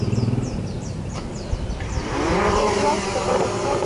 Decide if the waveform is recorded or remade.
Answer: remade